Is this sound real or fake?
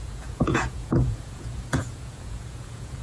fake